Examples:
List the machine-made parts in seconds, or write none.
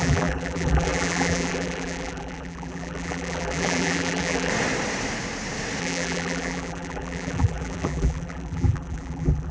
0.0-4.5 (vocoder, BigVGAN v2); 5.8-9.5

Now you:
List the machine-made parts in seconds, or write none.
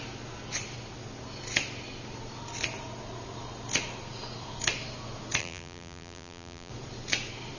5.4-6.7 (vocoder, BigVGAN v2)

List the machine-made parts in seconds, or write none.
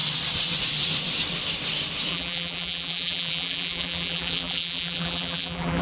2.1-5.8 (vocoder, BigVGAN v2)